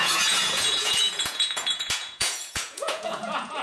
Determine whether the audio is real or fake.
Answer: fake